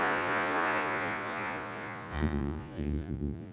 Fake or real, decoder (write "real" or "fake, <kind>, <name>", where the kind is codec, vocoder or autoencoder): fake, vocoder, Vocos